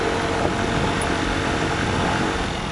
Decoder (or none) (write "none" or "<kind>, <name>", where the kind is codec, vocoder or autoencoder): none